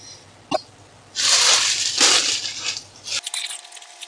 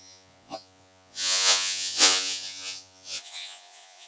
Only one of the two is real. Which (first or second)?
first